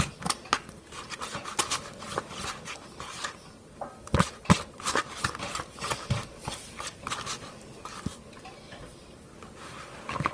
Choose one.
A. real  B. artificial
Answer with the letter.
A